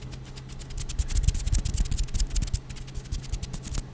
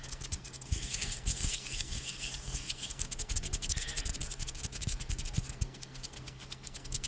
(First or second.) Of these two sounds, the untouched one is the first